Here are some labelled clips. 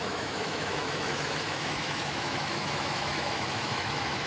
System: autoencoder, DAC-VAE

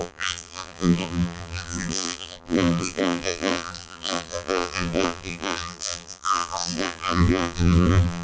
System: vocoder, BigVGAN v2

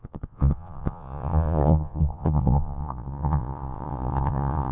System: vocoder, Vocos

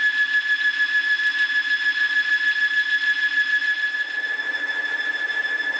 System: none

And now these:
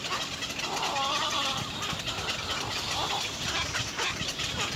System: none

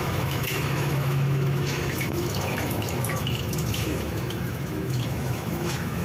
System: autoencoder, DAC-VAE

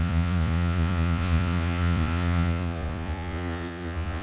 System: vocoder, Vocos